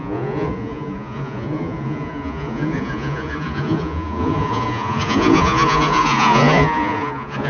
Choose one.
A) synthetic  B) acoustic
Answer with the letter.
A